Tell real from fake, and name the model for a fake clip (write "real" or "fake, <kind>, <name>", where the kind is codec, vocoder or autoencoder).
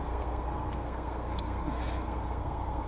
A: fake, codec, SNAC